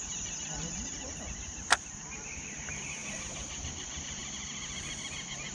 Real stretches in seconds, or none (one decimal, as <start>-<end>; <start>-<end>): 4.2-5.5